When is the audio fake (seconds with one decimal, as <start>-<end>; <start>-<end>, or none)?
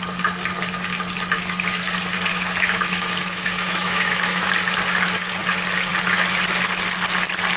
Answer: 2.3-4.5